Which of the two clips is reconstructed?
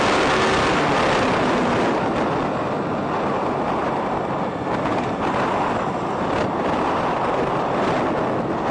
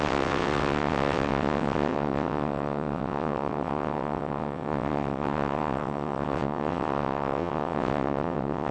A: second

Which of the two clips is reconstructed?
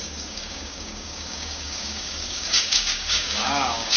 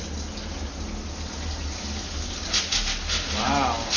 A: first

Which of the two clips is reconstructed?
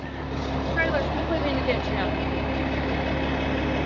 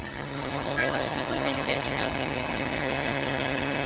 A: second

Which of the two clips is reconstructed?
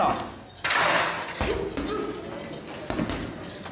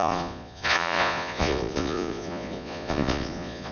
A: second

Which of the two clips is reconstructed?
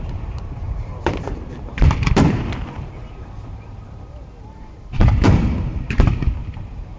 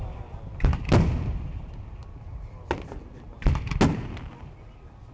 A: first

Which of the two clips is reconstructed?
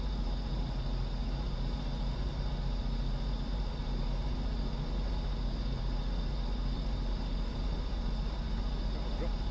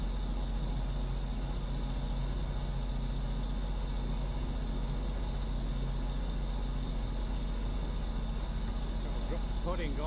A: first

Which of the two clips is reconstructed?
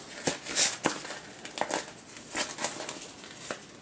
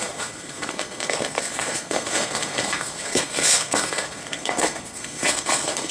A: second